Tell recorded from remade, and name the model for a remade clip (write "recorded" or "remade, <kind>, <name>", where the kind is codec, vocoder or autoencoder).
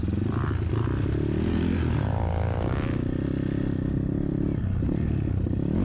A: recorded